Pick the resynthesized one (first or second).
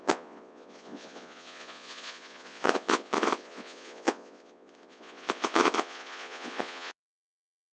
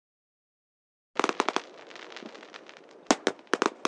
first